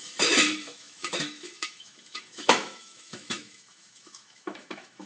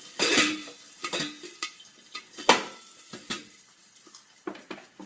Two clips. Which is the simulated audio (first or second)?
first